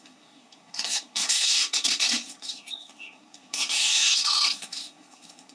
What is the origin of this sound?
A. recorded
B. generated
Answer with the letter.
B